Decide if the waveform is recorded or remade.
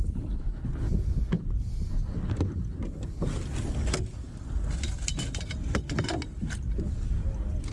recorded